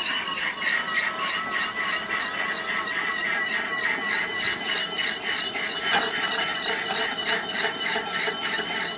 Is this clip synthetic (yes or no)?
no